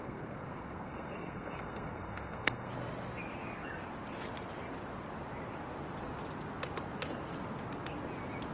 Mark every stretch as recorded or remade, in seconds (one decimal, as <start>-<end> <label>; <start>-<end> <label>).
0.0-2.7 remade; 2.7-8.5 recorded